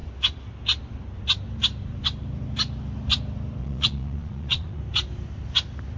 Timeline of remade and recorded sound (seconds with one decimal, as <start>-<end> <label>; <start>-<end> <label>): 0.0-3.6 recorded; 3.6-4.8 remade; 4.8-6.0 recorded